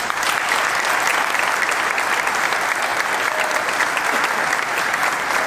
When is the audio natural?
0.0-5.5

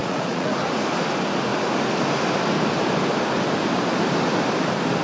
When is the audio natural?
0.5-5.0

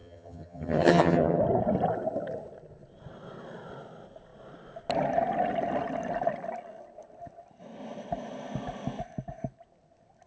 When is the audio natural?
1.4-10.3

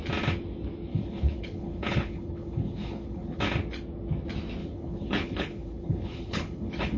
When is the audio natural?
0.0-0.9; 3.4-4.6

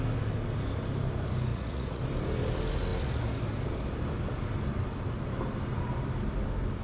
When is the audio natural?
0.0-1.5; 2.0-6.8